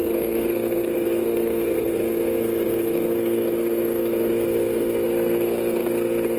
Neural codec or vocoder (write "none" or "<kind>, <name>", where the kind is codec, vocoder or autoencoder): codec, SNAC